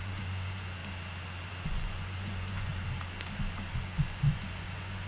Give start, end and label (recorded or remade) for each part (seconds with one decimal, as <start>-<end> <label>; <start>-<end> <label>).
0.0-0.8 remade; 0.8-1.5 recorded; 1.5-2.7 remade; 2.7-3.7 recorded; 3.7-5.1 remade